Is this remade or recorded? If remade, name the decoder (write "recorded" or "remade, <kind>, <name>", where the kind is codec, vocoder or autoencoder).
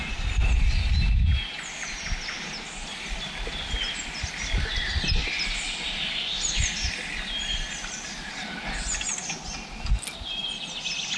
recorded